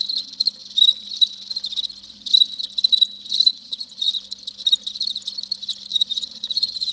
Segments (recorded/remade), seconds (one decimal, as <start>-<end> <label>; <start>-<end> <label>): 0.0-3.5 recorded; 3.5-4.1 remade; 4.1-5.9 recorded; 5.9-6.9 remade